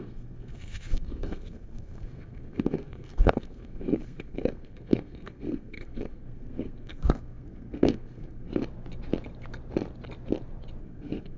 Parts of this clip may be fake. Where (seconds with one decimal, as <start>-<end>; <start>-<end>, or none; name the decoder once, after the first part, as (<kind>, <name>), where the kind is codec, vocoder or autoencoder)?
0.0-8.5 (codec, SNAC); 10.8-11.4